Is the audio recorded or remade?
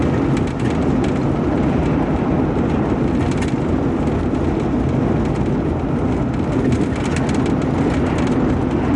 recorded